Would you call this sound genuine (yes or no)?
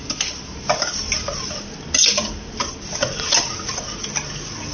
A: yes